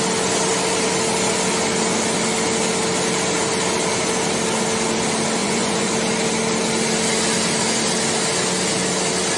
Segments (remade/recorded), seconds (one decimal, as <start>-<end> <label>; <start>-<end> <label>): 0.0-5.4 recorded; 5.4-5.9 remade; 5.9-9.4 recorded